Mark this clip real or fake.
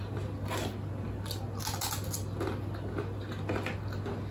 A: real